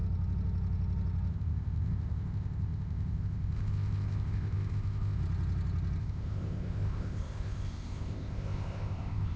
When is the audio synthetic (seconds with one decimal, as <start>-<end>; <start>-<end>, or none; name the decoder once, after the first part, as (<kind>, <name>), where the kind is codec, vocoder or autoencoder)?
1.3-5.2 (codec, ZipCodec); 6.0-9.4